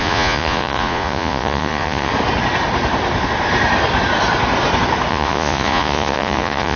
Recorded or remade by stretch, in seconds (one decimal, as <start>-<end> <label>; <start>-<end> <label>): 0.0-2.1 remade; 2.1-5.1 recorded; 5.1-6.8 remade